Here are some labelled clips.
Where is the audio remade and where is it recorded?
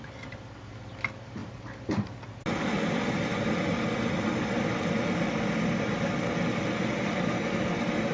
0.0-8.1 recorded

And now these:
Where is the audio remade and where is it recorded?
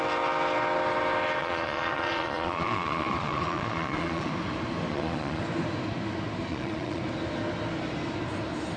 0.0-1.4 recorded; 1.4-4.3 remade; 4.3-4.9 recorded; 4.9-5.4 remade; 5.4-6.5 recorded; 6.5-7.0 remade; 7.0-8.8 recorded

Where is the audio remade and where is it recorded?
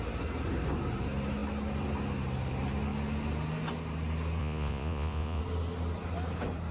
0.0-4.4 recorded; 4.4-5.4 remade; 5.4-6.7 recorded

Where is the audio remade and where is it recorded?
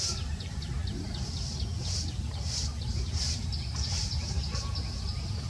0.0-5.5 recorded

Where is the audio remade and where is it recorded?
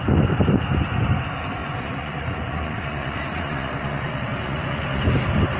0.0-1.6 recorded; 1.6-5.0 remade; 5.0-5.6 recorded